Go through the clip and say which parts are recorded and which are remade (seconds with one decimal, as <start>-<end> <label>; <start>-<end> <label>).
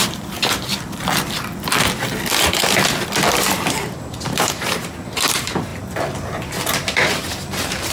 0.0-0.7 remade; 0.7-3.7 recorded; 3.7-5.7 remade; 5.7-6.9 recorded; 6.9-7.9 remade